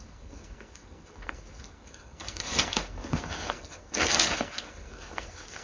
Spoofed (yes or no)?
yes